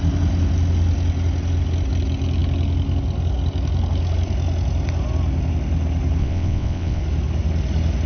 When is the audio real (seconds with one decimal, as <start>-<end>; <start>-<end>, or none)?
0.0-6.2; 7.0-8.1